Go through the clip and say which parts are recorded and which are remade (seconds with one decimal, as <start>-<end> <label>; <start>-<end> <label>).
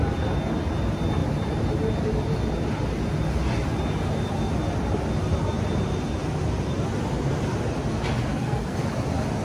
0.0-8.3 recorded; 8.3-8.9 remade; 8.9-9.4 recorded